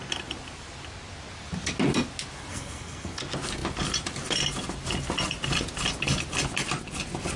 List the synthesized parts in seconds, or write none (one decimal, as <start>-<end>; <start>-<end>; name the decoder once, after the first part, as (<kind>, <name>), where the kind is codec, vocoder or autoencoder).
2.5-3.2 (codec, SNAC)